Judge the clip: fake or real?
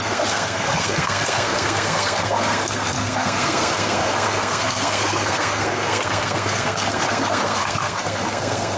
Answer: fake